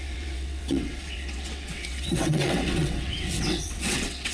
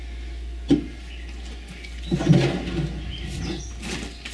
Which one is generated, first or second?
first